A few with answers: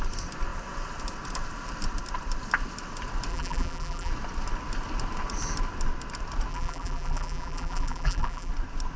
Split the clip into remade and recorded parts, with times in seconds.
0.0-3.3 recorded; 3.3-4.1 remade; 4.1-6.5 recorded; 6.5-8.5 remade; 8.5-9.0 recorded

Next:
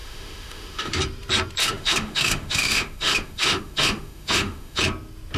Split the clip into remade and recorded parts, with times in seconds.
0.0-1.0 remade; 1.0-1.6 recorded; 1.6-4.8 remade; 4.8-5.4 recorded

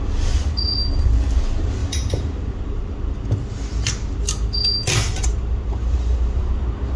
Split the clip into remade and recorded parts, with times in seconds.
0.0-1.8 recorded; 1.8-2.9 remade; 2.9-5.0 recorded; 5.0-6.4 remade; 6.4-7.0 recorded

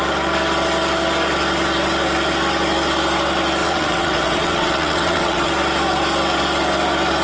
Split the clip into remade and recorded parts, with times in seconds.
0.0-3.6 recorded; 3.6-5.5 remade; 5.5-7.2 recorded